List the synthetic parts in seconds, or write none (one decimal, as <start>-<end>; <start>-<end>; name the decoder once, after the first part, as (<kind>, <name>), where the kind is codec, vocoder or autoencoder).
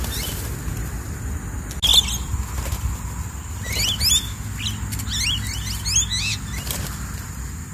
6.3-7.7 (vocoder, BigVGAN v2)